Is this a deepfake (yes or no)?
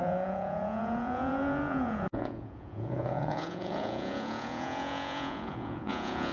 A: yes